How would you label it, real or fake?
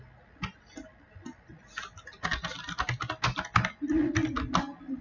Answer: real